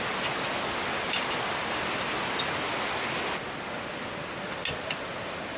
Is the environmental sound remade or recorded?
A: recorded